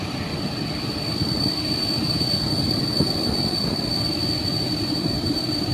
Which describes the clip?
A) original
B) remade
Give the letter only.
A